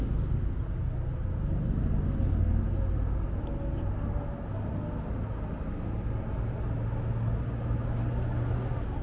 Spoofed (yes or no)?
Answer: no